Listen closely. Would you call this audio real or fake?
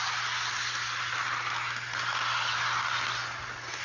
real